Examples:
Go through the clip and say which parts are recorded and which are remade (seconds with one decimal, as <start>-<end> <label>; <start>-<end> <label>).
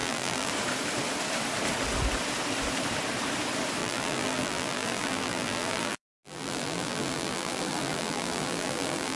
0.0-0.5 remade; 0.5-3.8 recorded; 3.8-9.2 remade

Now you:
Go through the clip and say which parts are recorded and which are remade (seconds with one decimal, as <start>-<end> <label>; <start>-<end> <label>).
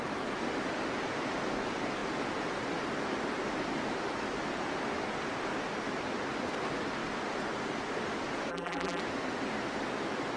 0.0-8.5 recorded; 8.5-9.0 remade; 9.0-10.4 recorded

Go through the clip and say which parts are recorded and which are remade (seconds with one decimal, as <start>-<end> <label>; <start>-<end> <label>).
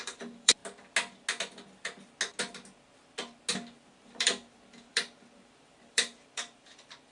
0.0-0.6 remade; 0.6-3.9 recorded; 3.9-7.1 remade